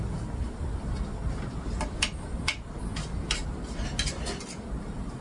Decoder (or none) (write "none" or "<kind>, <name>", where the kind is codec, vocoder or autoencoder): none